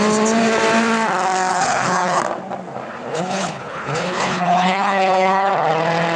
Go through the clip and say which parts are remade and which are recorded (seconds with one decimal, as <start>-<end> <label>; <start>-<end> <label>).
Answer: 0.0-1.5 recorded; 1.5-2.2 remade; 2.2-3.1 recorded; 3.1-5.5 remade; 5.5-6.2 recorded